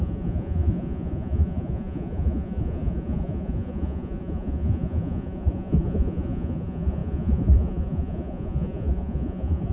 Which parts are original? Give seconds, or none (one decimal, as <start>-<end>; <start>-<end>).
none